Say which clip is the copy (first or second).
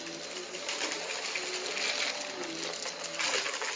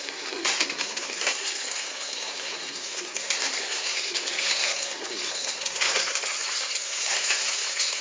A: second